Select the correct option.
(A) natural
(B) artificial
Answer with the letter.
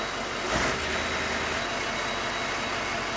A